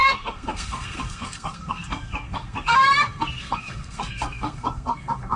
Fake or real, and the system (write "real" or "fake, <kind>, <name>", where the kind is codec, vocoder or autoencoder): fake, codec, SNAC